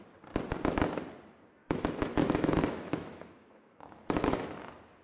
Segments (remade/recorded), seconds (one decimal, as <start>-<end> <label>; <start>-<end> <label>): 0.0-1.6 recorded; 1.6-4.6 remade; 4.6-5.0 recorded